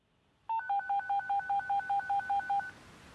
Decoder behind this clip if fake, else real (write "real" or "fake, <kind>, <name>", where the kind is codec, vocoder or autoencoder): real